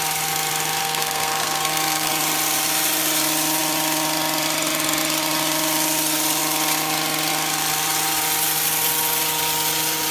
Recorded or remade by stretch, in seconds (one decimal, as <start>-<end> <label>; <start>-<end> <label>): 0.0-0.8 recorded; 0.8-2.1 remade; 2.1-10.1 recorded